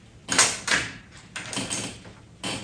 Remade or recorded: recorded